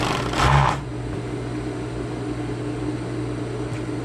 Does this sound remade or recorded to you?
remade